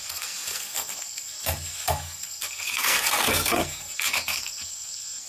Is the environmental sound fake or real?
fake